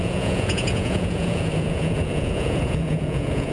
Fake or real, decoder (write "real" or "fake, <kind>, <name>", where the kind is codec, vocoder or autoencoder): fake, vocoder, Vocos